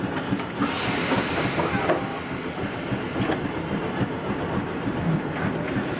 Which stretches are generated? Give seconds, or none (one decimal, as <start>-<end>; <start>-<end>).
none